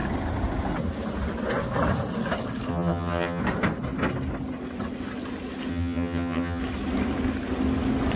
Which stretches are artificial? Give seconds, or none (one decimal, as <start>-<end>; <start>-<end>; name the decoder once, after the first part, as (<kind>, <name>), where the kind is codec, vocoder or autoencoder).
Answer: 2.7-3.4 (vocoder, HiFi-GAN); 5.7-6.6